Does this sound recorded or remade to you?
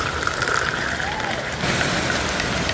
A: remade